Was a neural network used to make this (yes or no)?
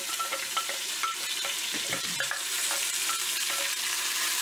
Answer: yes